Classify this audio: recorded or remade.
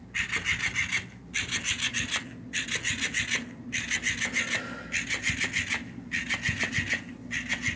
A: recorded